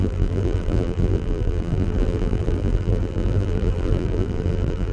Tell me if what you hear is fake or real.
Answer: fake